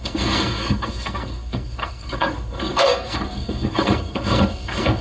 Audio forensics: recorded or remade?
remade